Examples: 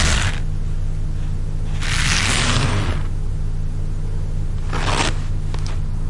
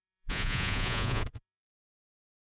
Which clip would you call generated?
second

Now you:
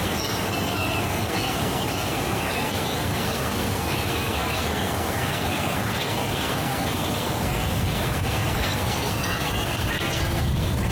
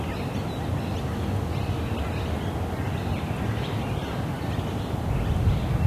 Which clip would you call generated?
first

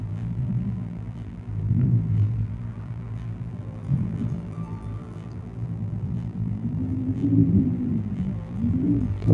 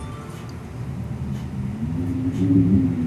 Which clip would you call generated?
first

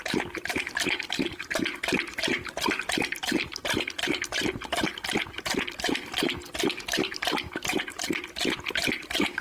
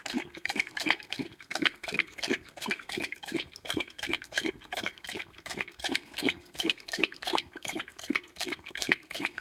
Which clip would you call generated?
second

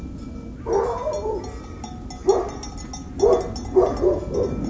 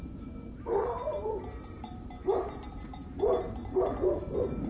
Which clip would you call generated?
second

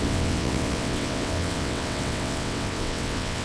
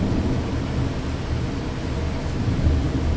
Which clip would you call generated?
first